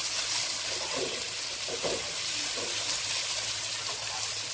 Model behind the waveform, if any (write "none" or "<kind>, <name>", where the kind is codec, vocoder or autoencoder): none